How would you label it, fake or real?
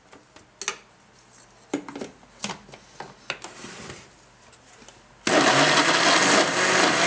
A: real